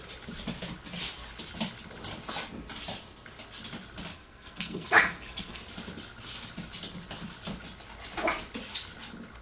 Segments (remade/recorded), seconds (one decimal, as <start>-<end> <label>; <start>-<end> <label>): 0.0-4.1 recorded; 4.1-5.6 remade; 5.6-9.4 recorded